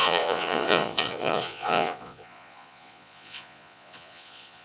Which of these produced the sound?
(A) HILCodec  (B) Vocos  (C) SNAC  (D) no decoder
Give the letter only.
B